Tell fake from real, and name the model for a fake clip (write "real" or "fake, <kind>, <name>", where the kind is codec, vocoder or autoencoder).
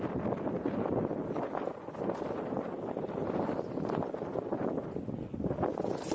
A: real